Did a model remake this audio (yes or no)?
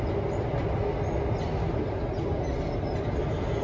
no